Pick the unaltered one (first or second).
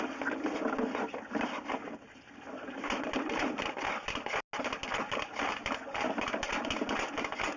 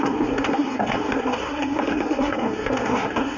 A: first